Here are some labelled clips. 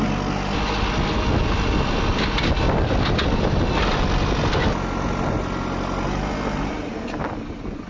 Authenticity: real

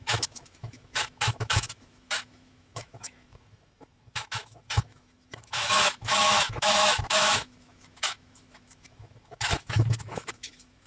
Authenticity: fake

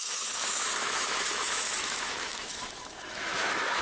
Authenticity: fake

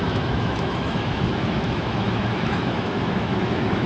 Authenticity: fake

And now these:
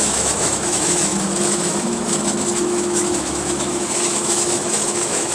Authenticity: fake